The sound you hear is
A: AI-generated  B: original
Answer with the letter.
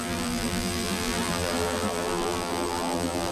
A